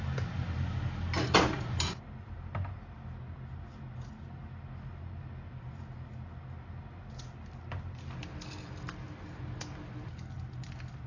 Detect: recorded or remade recorded